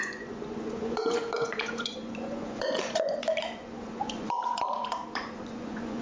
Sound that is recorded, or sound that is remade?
remade